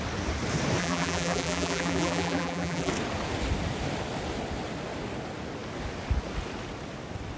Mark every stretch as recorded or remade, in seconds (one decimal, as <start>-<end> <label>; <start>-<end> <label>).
0.0-0.8 recorded; 0.8-2.9 remade; 2.9-7.4 recorded